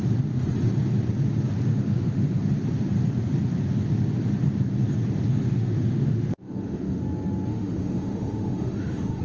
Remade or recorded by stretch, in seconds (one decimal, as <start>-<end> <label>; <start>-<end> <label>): 0.0-1.7 recorded; 1.7-2.4 remade; 2.4-5.3 recorded; 5.3-7.0 remade; 7.0-7.5 recorded; 7.5-9.2 remade